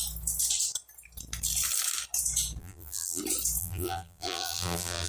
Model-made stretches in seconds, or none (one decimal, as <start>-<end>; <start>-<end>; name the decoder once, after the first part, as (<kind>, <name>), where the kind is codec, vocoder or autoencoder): 2.6-3.2 (vocoder, BigVGAN v2); 3.6-5.1